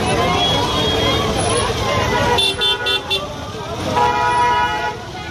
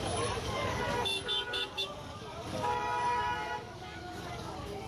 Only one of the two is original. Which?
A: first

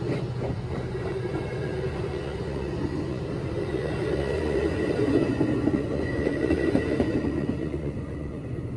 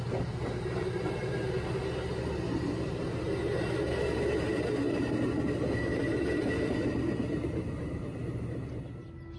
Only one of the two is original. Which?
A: second